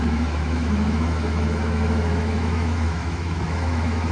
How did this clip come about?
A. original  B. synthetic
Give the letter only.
B